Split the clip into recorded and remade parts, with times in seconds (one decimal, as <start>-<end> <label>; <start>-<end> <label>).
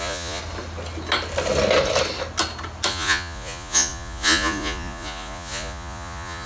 0.0-0.4 remade; 0.4-2.9 recorded; 2.9-6.5 remade